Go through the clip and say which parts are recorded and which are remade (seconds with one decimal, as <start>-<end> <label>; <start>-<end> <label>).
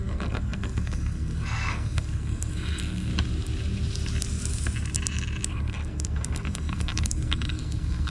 0.0-3.1 remade; 3.1-5.5 recorded; 5.5-8.1 remade